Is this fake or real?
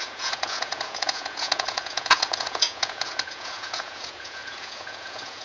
fake